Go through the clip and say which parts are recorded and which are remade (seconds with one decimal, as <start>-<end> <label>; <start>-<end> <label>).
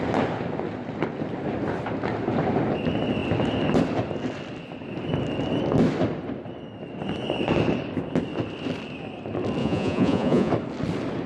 0.0-9.6 recorded; 9.6-10.5 remade; 10.5-11.3 recorded